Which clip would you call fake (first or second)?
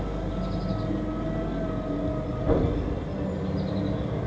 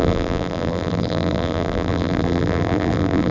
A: second